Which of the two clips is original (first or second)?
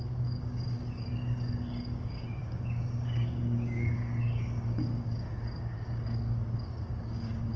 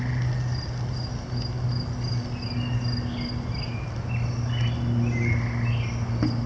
second